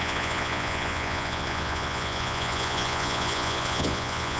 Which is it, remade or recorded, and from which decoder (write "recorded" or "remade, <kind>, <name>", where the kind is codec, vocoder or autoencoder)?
remade, vocoder, Vocos